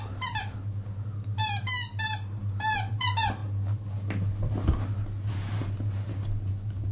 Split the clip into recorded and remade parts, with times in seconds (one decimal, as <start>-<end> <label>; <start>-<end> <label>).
0.0-6.9 recorded